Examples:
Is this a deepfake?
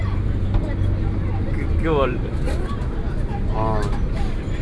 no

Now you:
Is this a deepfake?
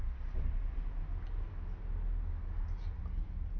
no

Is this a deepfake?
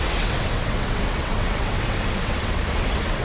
yes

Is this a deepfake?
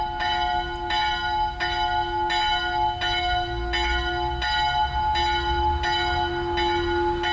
no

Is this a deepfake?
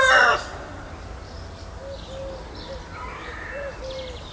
no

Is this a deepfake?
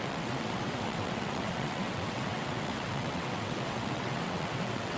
yes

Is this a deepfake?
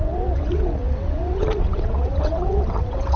yes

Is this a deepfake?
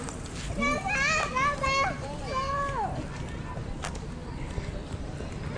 no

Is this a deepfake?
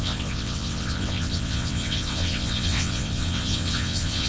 yes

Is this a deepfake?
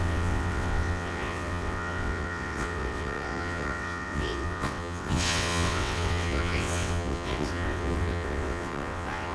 yes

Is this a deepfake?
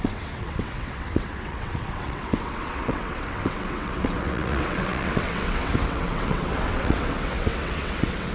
yes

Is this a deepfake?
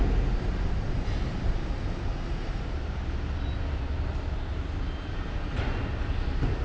no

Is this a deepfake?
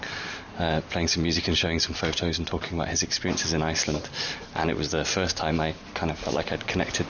no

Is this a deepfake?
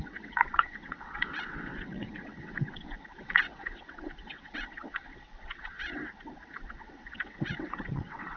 yes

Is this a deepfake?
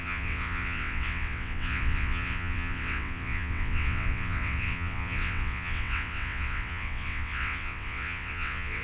yes